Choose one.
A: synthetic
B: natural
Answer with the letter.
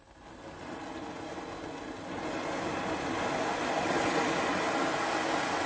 B